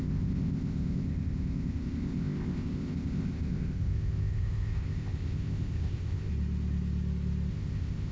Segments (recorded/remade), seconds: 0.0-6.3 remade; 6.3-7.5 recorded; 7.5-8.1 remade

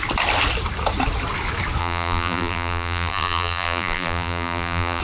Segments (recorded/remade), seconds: 0.0-1.8 recorded; 1.8-5.0 remade

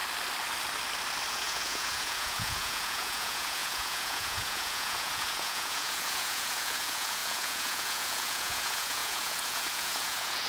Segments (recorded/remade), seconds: 0.0-1.3 recorded; 1.3-10.5 remade

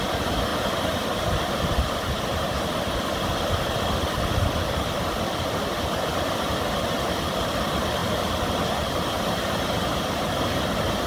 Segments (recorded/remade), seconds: 0.0-8.0 recorded; 8.0-10.6 remade; 10.6-11.1 recorded

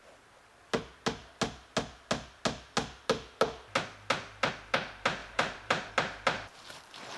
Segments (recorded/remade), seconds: 0.0-5.2 recorded; 5.2-5.9 remade; 5.9-7.2 recorded

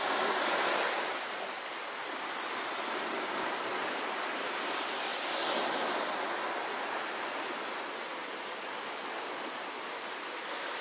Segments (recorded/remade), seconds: 0.0-8.2 recorded; 8.2-9.1 remade; 9.1-10.8 recorded

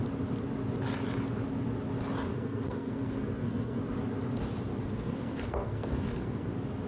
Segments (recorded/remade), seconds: 0.0-2.3 recorded; 2.3-3.8 remade; 3.8-4.8 recorded; 4.8-6.5 remade; 6.5-6.9 recorded